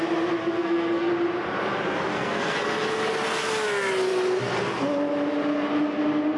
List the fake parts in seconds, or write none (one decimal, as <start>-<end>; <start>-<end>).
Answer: 0.4-1.1; 2.1-2.6